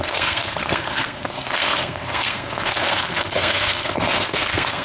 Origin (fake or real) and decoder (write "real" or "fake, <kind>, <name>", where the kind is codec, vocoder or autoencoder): fake, codec, SNAC